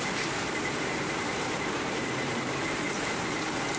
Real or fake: fake